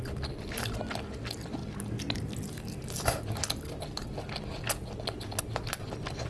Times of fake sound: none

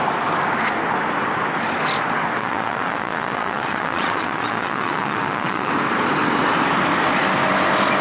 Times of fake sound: 2.4-5.7 (vocoder, Vocos)

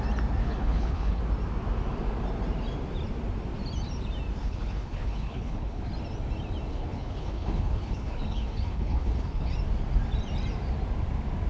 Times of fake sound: 0.4-1.2 (codec, HILCodec); 4.4-5.8; 6.7-9.5

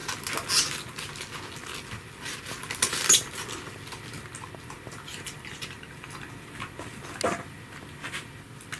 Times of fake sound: 5.1-6.1 (vocoder, BigVGAN v2)